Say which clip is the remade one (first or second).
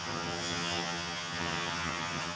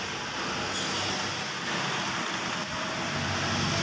first